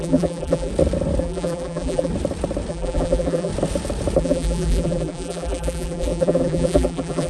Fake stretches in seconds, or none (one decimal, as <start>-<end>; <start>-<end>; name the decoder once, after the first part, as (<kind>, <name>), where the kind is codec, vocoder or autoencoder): 0.0-0.7 (vocoder, BigVGAN v2); 1.2-2.1; 2.7-3.5; 4.2-7.3